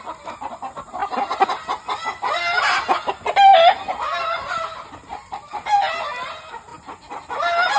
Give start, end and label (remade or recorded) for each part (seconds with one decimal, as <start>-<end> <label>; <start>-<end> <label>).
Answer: 0.0-7.8 recorded